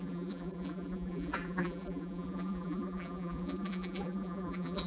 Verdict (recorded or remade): remade